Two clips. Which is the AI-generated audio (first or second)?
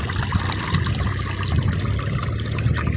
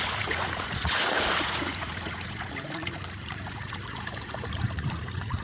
second